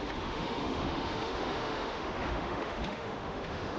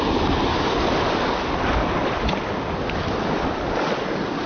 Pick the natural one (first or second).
second